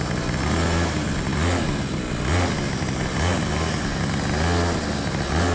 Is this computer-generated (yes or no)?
no